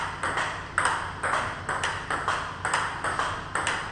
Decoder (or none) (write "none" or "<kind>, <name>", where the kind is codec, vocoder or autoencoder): none